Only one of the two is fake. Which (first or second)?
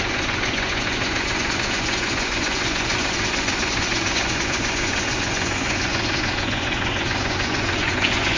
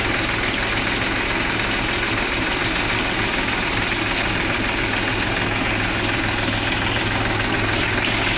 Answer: first